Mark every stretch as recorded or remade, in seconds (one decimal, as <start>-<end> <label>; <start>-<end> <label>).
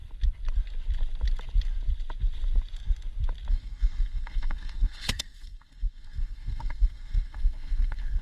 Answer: 0.0-3.5 recorded; 3.5-8.2 remade